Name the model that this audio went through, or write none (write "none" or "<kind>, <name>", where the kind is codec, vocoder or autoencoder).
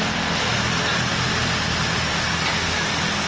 none